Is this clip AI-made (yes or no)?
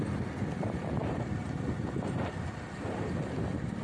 no